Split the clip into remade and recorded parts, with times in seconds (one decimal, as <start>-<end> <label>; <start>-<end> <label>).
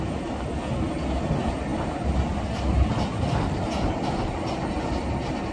0.0-5.5 recorded